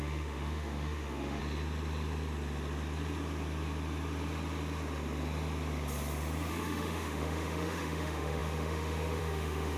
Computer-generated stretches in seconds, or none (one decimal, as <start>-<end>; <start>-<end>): 0.0-1.4; 6.5-9.8